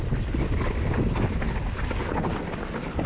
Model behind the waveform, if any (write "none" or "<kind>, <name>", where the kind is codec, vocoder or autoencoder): none